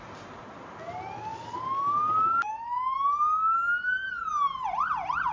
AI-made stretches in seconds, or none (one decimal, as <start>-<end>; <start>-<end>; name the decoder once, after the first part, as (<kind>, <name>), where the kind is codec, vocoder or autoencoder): none